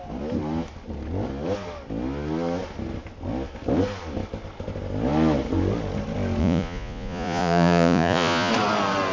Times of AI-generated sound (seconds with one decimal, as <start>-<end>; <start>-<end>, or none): 6.4-8.5